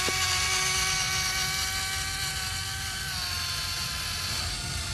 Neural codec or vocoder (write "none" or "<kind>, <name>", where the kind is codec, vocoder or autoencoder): none